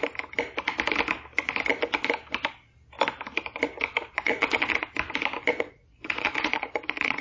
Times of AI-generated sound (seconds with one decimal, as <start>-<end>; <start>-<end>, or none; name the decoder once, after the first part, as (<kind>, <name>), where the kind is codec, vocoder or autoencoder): 4.0-4.9 (vocoder, Vocos); 5.5-7.2